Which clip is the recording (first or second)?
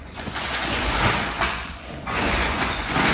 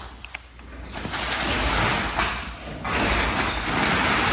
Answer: second